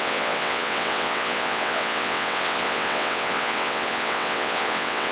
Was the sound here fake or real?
fake